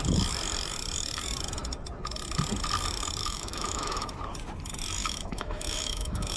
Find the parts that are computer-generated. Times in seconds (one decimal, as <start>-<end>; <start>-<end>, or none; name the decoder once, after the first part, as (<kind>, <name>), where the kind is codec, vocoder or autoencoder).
3.2-4.1 (autoencoder, DAC-VAE); 5.0-6.4